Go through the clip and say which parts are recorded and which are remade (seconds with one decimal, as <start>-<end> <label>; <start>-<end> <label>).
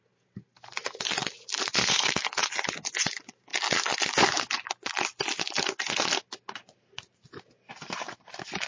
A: 0.0-1.8 recorded; 1.8-2.5 remade; 2.5-8.7 recorded